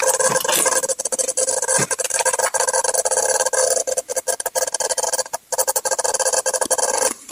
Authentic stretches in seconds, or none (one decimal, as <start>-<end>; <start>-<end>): 0.0-7.3